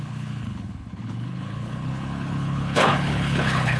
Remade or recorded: remade